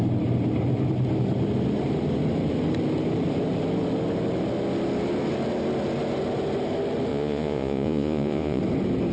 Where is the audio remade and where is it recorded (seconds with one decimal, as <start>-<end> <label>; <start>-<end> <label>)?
0.0-7.1 recorded; 7.1-8.6 remade; 8.6-9.1 recorded